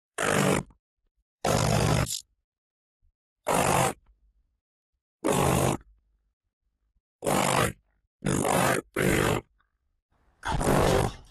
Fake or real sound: fake